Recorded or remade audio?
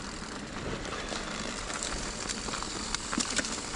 recorded